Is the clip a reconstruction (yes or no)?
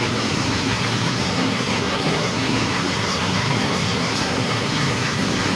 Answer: yes